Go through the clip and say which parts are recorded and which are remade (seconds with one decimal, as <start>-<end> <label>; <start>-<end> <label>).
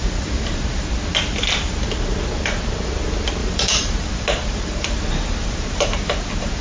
0.0-0.9 remade; 0.9-3.4 recorded; 3.4-6.6 remade